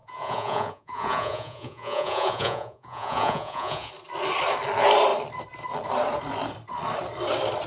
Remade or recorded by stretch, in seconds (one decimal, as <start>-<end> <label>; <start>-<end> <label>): 0.0-3.9 remade; 3.9-7.7 recorded